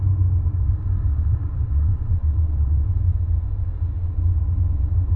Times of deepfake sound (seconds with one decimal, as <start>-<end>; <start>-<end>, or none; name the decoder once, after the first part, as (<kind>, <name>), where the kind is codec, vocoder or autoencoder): 1.1-3.0 (vocoder, WaveNeXt)